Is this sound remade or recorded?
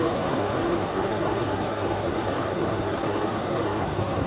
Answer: remade